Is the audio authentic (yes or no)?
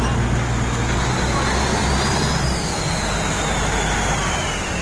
yes